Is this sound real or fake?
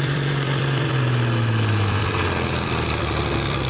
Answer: fake